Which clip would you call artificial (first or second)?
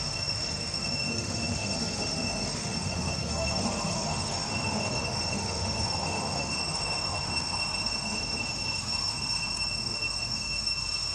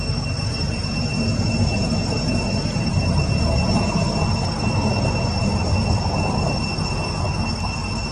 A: first